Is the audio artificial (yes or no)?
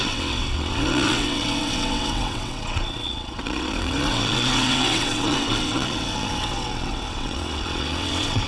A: yes